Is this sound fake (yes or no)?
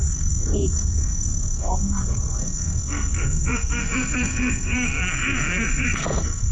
yes